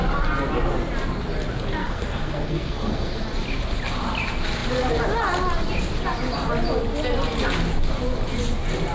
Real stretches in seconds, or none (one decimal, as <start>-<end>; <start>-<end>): 0.0-1.8; 3.2-8.9